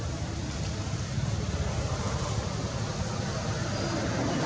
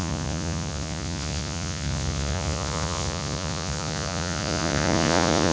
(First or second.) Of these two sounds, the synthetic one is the second